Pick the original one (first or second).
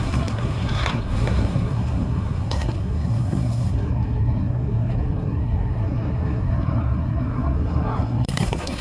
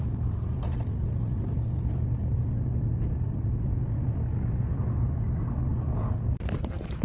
second